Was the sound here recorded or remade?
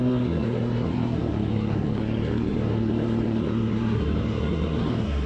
remade